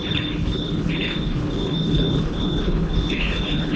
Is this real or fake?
fake